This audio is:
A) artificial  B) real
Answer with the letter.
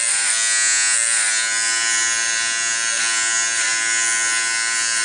B